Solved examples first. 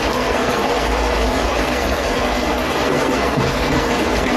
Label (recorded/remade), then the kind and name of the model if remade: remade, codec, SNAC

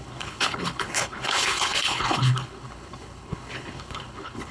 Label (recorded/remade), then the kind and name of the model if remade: remade, codec, HILCodec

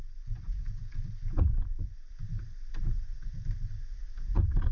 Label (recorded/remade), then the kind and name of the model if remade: remade, vocoder, BigVGAN v2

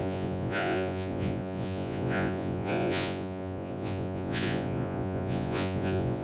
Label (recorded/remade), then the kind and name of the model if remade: remade, vocoder, Vocos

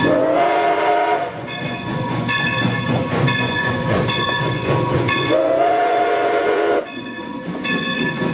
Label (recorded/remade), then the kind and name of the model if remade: remade, vocoder, Vocos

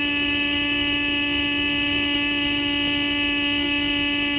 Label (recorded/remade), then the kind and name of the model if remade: recorded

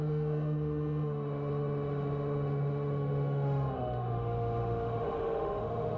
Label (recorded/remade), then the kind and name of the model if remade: remade, autoencoder, DAC-VAE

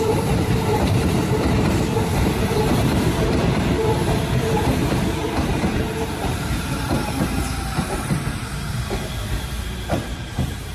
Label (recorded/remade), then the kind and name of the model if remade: remade, vocoder, BigVGAN v2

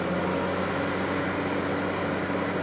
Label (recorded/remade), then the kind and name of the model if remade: recorded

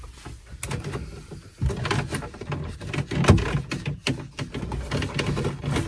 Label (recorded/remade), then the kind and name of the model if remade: recorded